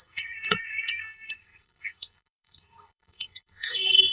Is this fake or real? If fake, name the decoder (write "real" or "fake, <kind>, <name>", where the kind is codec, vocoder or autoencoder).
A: fake, codec, SNAC